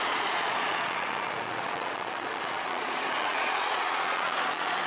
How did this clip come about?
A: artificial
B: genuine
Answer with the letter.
A